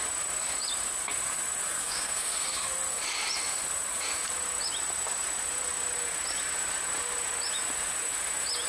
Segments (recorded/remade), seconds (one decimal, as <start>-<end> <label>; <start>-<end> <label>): 0.0-1.7 recorded; 1.7-2.7 remade; 2.7-8.7 recorded